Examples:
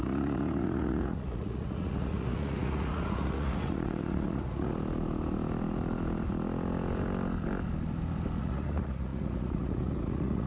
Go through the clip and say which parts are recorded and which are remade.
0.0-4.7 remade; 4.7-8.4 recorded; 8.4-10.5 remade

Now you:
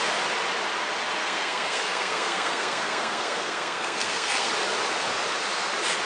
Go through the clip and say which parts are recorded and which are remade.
0.0-1.2 recorded; 1.2-4.5 remade; 4.5-6.1 recorded

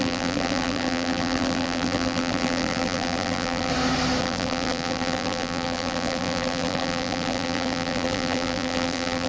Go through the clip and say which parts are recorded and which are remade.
0.0-3.7 remade; 3.7-4.2 recorded; 4.2-9.3 remade

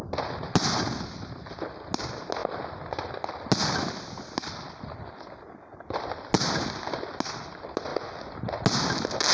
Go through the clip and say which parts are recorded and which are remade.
0.0-9.3 recorded